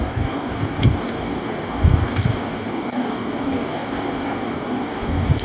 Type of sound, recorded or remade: remade